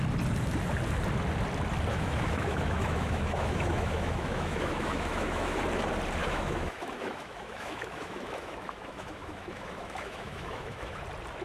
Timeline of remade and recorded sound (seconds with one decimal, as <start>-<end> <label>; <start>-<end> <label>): 0.0-1.9 recorded; 1.9-5.6 remade; 5.6-6.2 recorded; 6.2-11.0 remade; 11.0-11.4 recorded